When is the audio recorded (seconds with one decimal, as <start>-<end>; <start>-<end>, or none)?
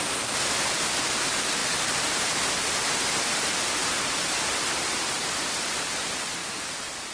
0.0-3.8; 5.1-6.4